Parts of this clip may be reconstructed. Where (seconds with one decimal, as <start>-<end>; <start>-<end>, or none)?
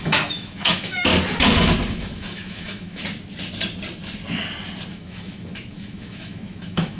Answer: 0.0-1.1; 2.0-3.0; 4.9-7.0